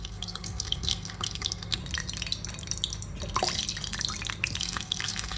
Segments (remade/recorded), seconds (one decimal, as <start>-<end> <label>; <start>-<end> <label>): 0.0-1.8 remade; 1.8-4.6 recorded; 4.6-5.4 remade